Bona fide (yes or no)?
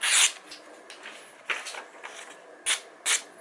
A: yes